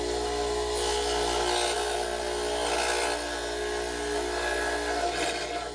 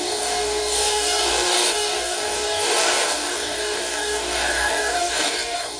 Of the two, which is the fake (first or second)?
second